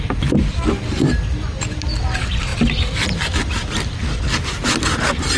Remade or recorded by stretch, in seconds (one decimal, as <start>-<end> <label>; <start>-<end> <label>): 0.0-5.4 recorded